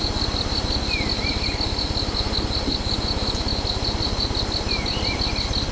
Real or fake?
real